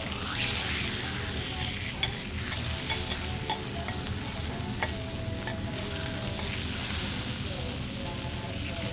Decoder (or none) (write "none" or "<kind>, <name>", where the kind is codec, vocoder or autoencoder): none